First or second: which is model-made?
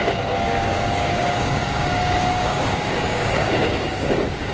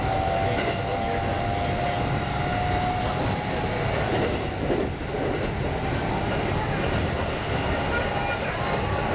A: first